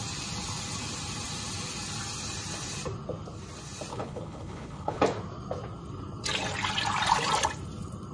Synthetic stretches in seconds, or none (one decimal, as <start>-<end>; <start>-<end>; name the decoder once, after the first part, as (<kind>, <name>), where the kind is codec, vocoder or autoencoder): 3.9-5.0 (codec, HILCodec)